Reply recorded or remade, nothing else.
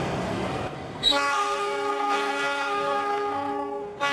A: remade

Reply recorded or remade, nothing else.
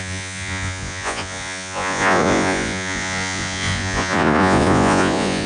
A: remade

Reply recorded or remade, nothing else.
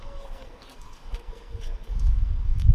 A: remade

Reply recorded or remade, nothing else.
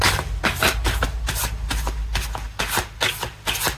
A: recorded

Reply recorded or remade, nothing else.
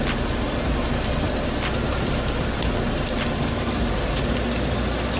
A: recorded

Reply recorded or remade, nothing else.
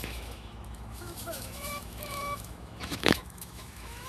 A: remade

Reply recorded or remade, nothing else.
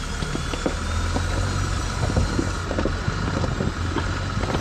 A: recorded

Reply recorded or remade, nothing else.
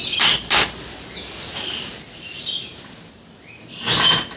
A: recorded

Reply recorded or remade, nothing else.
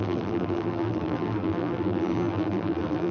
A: remade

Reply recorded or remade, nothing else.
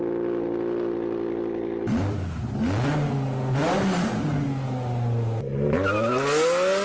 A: recorded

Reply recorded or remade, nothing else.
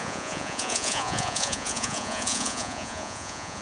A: remade